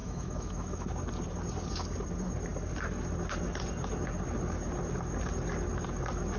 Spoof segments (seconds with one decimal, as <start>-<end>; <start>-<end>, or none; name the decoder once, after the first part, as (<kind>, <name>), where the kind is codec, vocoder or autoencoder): 0.0-0.9 (autoencoder, DAC-VAE)